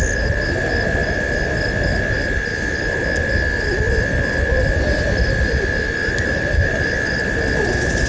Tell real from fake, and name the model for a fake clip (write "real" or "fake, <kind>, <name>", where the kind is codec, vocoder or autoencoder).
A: real